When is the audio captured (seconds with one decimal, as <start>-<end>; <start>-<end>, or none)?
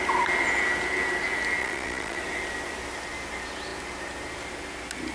0.0-1.6; 2.2-5.1